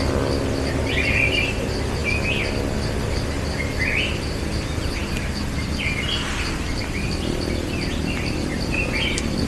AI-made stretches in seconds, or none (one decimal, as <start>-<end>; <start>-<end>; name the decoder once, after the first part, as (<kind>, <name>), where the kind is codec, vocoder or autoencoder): none